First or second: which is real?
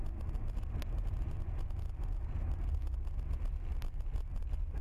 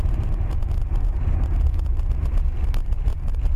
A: first